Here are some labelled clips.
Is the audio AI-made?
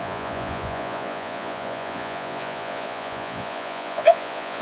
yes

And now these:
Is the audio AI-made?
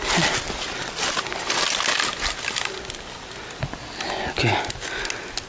no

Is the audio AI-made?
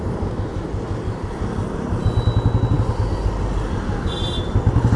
no